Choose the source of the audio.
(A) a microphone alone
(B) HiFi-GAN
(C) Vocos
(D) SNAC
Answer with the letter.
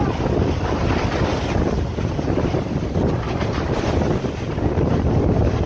A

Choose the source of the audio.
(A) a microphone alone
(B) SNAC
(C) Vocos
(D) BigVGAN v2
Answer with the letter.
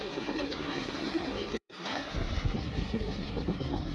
B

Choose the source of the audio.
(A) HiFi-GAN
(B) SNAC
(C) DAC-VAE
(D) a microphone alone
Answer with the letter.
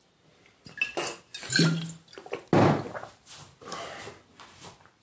D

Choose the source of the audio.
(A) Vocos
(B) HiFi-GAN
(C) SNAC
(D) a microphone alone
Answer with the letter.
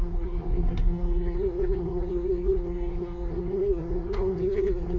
C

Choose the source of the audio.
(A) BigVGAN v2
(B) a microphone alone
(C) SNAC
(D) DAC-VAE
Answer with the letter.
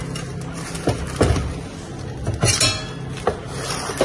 B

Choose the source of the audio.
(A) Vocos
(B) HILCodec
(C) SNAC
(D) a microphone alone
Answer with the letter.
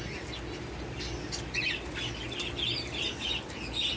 D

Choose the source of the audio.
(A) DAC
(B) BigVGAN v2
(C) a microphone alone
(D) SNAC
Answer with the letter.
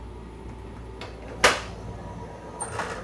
C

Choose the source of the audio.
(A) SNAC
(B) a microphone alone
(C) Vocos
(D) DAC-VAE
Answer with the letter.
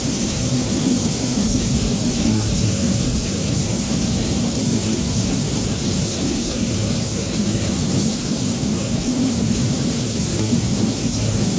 A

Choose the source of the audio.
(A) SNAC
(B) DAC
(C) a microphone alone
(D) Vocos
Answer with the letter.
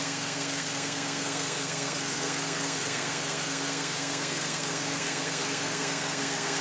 A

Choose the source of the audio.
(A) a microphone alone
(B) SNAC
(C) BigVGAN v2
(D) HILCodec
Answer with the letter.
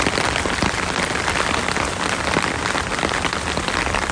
A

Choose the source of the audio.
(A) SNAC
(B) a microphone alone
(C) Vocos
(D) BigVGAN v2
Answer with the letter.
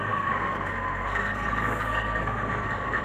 A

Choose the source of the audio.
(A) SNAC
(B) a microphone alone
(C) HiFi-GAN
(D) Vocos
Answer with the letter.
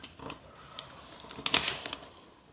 B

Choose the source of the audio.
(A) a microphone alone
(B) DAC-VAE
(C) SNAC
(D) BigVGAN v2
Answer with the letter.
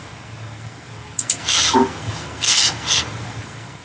C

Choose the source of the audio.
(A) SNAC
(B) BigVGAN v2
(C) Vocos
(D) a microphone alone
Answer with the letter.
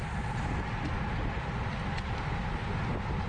D